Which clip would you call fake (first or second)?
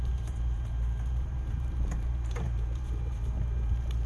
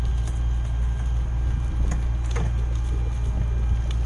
first